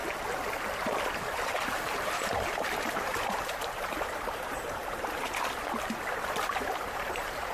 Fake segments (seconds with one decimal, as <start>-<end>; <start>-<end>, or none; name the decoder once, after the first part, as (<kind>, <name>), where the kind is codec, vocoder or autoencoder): 1.4-4.8 (vocoder, BigVGAN v2); 6.3-7.5